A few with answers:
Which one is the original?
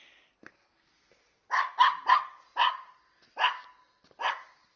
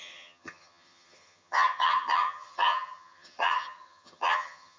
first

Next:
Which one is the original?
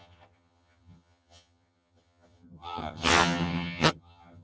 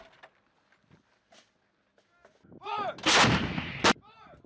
second